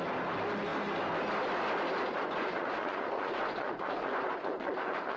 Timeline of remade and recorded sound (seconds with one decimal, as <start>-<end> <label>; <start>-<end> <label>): 0.0-2.1 recorded; 2.1-5.2 remade